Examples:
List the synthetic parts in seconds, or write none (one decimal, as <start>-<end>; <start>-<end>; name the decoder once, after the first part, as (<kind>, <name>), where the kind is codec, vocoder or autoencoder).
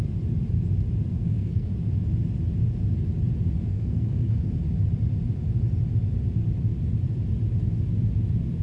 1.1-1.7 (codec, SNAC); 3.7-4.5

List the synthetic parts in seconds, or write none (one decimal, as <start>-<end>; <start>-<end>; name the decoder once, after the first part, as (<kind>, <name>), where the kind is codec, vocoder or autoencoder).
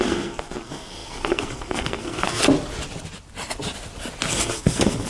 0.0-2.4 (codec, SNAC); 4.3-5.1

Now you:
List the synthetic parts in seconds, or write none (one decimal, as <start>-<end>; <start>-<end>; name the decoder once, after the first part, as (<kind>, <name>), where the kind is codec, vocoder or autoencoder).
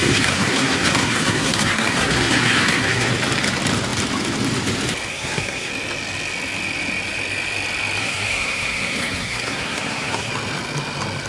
0.0-3.1 (codec, SNAC); 5.1-5.7; 8.0-10.3